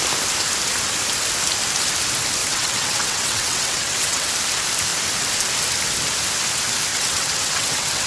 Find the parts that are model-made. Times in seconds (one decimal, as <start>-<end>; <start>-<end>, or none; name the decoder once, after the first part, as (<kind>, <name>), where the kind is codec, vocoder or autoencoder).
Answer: 2.4-4.3 (vocoder, WaveNeXt); 6.9-8.1